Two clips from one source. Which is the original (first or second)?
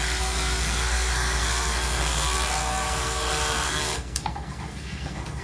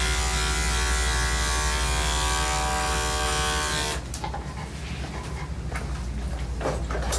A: second